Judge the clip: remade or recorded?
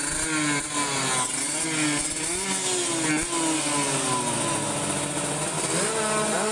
recorded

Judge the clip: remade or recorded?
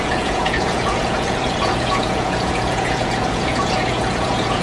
remade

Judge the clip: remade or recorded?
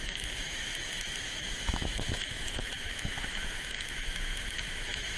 remade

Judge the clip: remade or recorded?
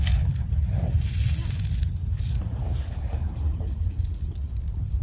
recorded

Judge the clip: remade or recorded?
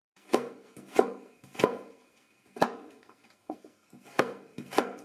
remade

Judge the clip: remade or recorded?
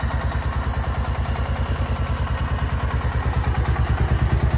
recorded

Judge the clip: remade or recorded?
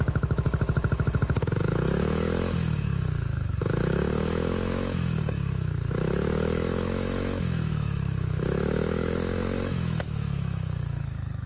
remade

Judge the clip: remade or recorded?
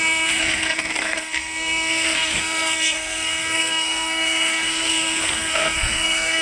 remade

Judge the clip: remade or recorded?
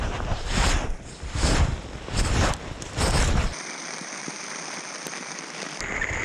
remade